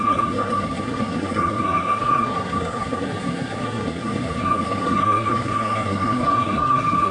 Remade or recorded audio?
remade